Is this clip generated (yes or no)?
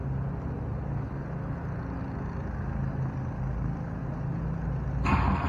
no